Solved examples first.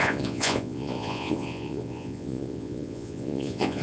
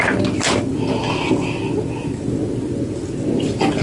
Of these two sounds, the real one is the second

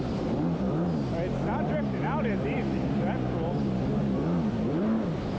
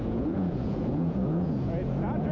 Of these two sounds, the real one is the first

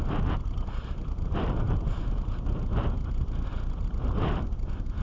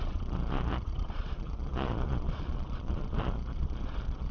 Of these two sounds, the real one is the first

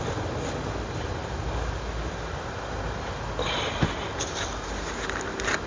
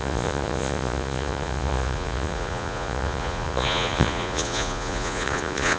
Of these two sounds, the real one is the first